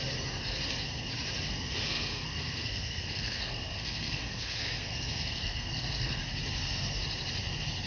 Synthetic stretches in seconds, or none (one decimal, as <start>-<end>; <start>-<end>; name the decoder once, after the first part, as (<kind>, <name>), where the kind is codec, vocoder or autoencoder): 1.5-6.2 (codec, SNAC)